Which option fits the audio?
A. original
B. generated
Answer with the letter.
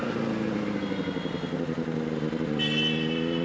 A